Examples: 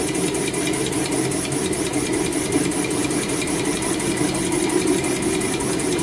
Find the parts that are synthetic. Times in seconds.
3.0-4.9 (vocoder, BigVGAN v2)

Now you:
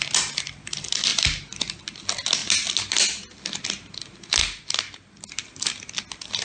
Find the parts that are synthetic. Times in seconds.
1.1-1.8 (vocoder, BigVGAN v2)

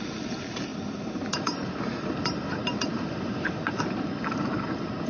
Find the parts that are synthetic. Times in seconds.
0.7-3.8 (vocoder, BigVGAN v2)

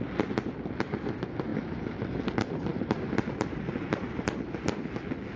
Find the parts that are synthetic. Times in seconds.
1.5-2.2 (vocoder, BigVGAN v2); 2.7-4.3